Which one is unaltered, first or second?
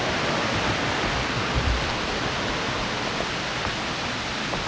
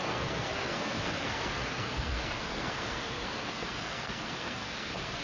first